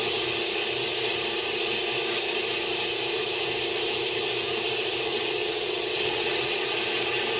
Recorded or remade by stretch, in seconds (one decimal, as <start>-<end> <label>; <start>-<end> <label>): 0.0-5.1 recorded; 5.1-6.8 remade; 6.8-7.4 recorded